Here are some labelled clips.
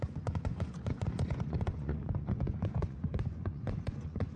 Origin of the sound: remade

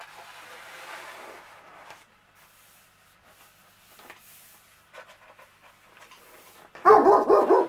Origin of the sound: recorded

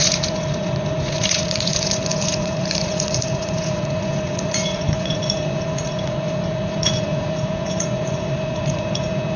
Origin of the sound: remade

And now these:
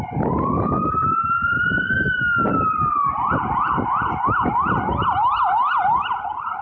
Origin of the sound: recorded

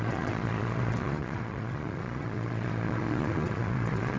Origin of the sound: remade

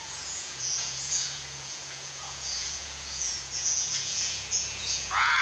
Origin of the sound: remade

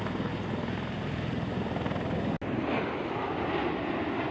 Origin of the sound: recorded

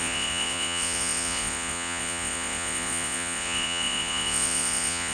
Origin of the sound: remade